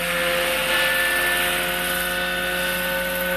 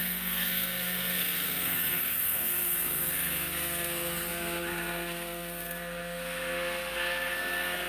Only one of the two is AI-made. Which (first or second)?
second